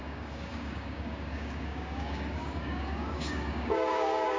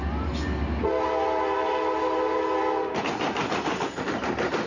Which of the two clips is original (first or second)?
second